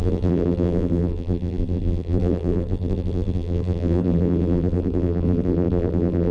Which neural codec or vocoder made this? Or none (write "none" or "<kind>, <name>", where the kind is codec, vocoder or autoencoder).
vocoder, BigVGAN v2